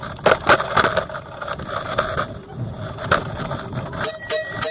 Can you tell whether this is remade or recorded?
recorded